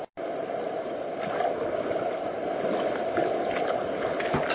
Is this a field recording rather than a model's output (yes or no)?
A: yes